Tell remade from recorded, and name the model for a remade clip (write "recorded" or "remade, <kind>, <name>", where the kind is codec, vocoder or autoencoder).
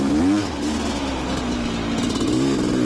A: recorded